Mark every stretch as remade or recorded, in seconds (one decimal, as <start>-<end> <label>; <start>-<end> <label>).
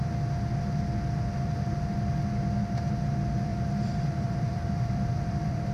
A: 0.0-3.5 recorded; 3.5-5.7 remade